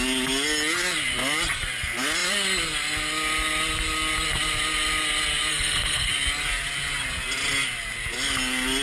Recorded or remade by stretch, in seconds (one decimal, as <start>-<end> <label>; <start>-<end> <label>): 0.0-5.5 recorded; 5.5-6.1 remade; 6.1-8.8 recorded